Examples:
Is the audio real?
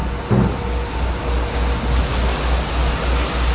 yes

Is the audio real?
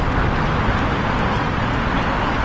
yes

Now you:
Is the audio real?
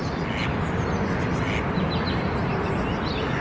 yes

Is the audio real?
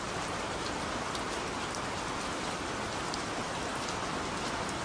yes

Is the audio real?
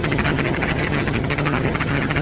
no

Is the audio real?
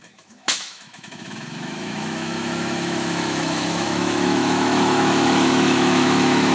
no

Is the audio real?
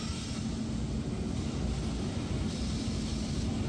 yes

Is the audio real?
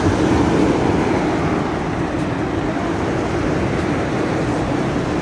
yes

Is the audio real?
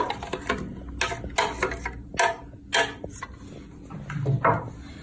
yes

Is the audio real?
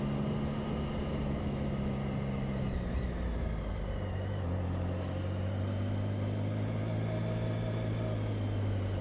yes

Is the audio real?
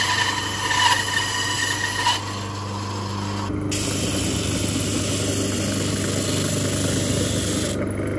yes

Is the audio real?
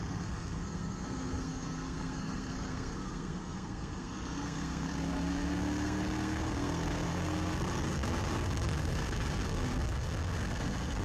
no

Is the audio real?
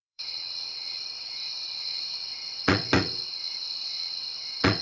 no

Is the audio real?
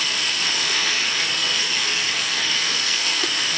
no